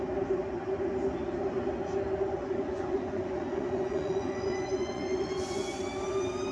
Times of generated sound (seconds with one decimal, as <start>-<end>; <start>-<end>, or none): 2.4-5.8